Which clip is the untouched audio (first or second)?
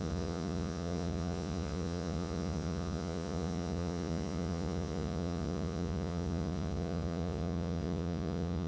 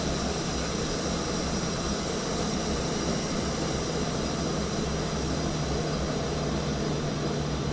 second